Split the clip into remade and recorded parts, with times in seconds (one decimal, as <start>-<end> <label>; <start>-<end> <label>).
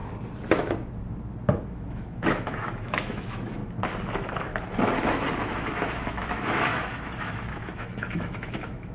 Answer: 0.0-1.5 recorded; 1.5-3.6 remade; 3.6-4.1 recorded; 4.1-4.5 remade; 4.5-5.4 recorded; 5.4-8.9 remade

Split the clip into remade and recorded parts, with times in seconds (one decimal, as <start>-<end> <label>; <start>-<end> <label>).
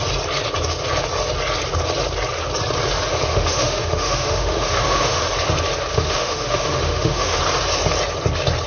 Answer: 0.0-3.3 recorded; 3.3-5.2 remade; 5.2-5.9 recorded; 5.9-7.4 remade; 7.4-8.7 recorded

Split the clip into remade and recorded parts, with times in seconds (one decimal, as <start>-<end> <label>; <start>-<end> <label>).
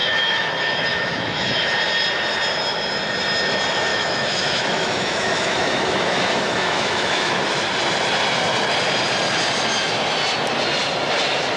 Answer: 0.0-0.5 remade; 0.5-0.9 recorded; 0.9-1.5 remade; 1.5-3.9 recorded; 3.9-7.4 remade; 7.4-11.6 recorded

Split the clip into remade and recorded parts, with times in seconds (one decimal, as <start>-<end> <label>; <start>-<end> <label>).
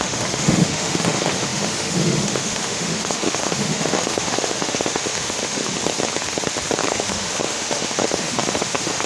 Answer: 0.0-5.6 remade; 5.6-6.9 recorded; 6.9-9.1 remade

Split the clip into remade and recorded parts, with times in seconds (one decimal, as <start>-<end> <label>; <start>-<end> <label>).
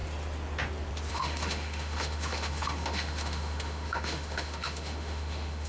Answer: 0.0-1.1 recorded; 1.1-5.7 remade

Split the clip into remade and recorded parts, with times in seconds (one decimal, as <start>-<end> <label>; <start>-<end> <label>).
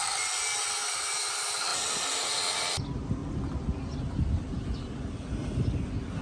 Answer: 0.0-6.2 recorded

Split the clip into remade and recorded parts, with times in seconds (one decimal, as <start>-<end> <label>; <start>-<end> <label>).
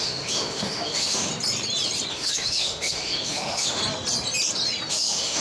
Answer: 0.0-1.3 remade; 1.3-2.1 recorded; 2.1-3.8 remade; 3.8-4.9 recorded; 4.9-5.4 remade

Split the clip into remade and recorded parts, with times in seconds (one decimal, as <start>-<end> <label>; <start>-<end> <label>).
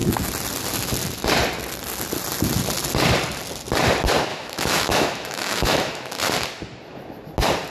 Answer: 0.0-4.3 recorded; 4.3-6.3 remade; 6.3-7.7 recorded